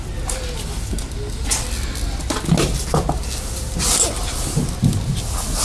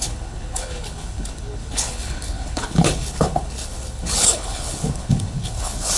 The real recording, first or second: first